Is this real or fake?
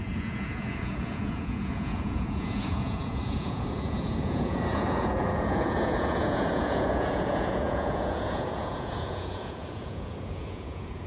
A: fake